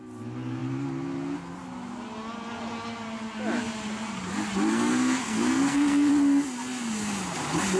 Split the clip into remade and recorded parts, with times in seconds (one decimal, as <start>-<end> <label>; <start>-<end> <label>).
0.0-4.7 recorded; 4.7-6.1 remade; 6.1-7.8 recorded